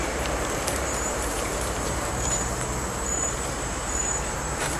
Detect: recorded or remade remade